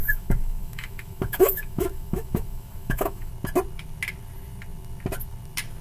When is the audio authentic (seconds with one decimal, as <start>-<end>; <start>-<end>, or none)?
3.3-5.8